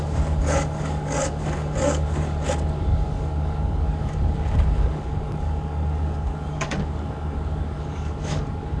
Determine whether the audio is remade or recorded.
remade